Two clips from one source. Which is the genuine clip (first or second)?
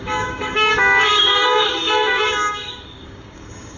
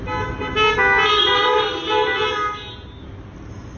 second